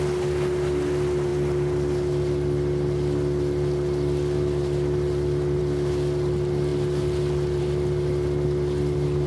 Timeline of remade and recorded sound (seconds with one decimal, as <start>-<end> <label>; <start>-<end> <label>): 0.0-9.3 recorded